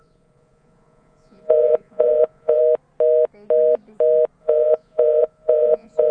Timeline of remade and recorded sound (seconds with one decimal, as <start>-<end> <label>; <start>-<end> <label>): 0.0-2.6 remade; 2.6-4.4 recorded; 4.4-6.1 remade